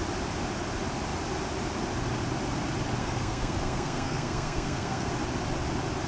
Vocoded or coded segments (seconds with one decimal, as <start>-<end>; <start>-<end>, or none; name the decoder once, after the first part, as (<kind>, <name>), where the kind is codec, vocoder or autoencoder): 3.0-5.1 (codec, SNAC)